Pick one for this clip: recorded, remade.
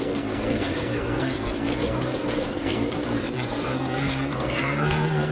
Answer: remade